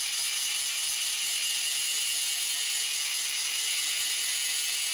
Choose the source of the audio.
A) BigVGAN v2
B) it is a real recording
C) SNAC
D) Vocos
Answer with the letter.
B